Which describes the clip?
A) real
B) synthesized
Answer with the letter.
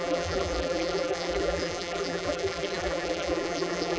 B